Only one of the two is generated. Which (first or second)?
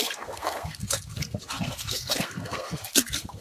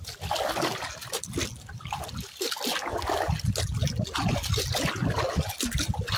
first